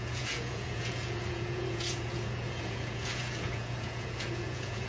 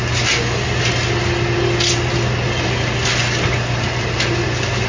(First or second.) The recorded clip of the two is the second